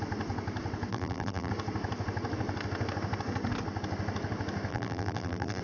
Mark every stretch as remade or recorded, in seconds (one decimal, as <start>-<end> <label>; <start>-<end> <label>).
0.0-0.9 recorded; 0.9-1.5 remade; 1.5-4.7 recorded; 4.7-5.6 remade